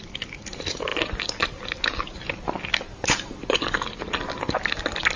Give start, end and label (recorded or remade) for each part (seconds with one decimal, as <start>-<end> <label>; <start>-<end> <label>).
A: 0.0-5.2 recorded